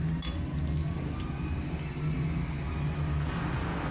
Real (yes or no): yes